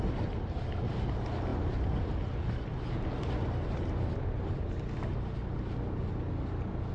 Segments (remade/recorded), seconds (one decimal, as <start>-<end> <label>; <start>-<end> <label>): 0.0-6.9 recorded